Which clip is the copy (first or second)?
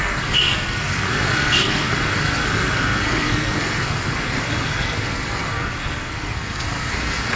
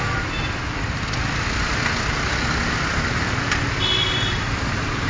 first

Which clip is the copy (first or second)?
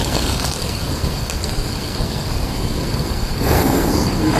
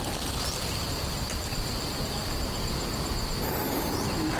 first